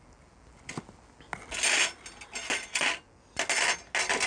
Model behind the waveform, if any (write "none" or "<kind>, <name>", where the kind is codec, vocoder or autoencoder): none